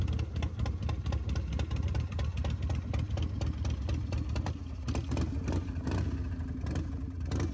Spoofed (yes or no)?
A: no